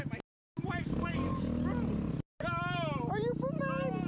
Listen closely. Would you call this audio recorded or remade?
recorded